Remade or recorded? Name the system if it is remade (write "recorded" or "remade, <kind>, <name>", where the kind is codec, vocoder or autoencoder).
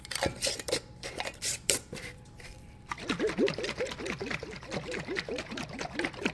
remade, vocoder, BigVGAN v2